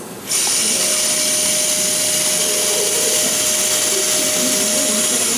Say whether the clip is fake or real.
real